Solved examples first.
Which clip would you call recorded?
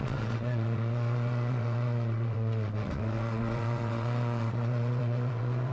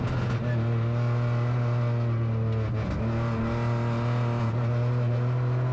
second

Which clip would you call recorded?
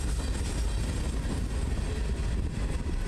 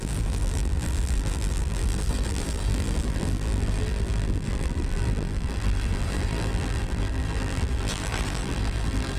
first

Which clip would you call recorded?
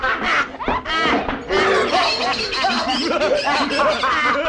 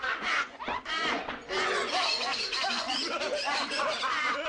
first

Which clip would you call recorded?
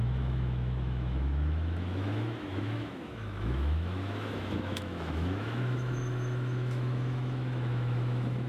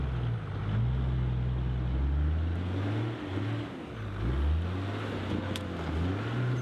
second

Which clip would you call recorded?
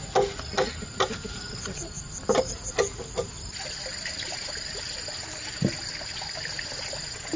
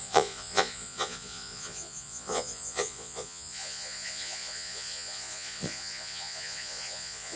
first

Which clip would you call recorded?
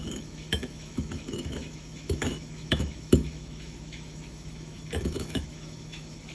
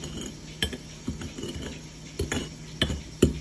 second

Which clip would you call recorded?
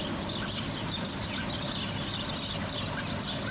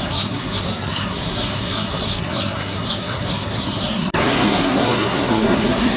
first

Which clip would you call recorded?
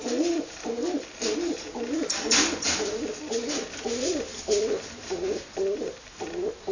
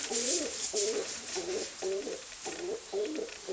first